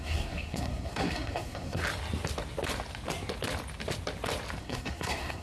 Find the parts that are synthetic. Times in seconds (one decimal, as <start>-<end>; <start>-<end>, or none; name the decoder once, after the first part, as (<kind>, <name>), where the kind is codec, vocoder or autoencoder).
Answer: 0.0-1.8 (codec, SNAC); 4.6-5.4